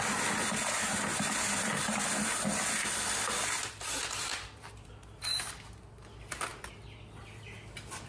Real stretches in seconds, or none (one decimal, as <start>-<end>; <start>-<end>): 0.0-8.1